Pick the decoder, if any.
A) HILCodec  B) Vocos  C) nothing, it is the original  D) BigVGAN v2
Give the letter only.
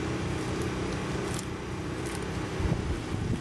C